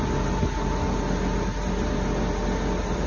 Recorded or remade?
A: recorded